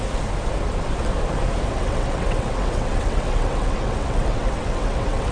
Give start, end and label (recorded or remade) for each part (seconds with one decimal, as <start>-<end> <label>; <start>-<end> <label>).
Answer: 0.0-1.7 recorded; 1.7-5.3 remade